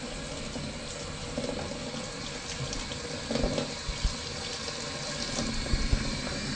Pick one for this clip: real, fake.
real